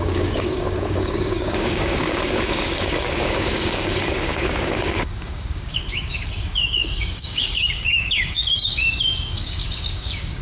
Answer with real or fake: fake